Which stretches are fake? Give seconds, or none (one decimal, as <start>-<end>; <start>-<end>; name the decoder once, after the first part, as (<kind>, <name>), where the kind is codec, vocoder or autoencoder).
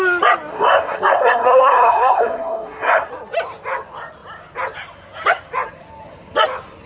0.5-3.1 (codec, SNAC)